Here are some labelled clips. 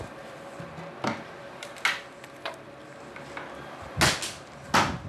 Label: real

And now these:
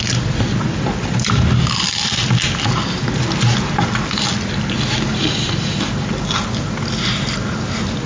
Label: real